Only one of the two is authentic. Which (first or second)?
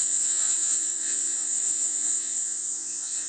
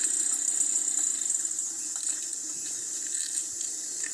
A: second